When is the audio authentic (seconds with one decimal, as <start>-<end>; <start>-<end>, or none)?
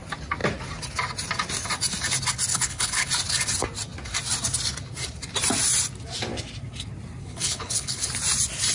0.0-2.5; 3.1-7.2; 8.1-8.7